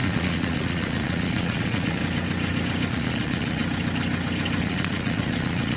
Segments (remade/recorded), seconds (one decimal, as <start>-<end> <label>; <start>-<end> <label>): 0.0-2.0 remade; 2.0-2.9 recorded; 2.9-3.6 remade; 3.6-4.6 recorded; 4.6-5.8 remade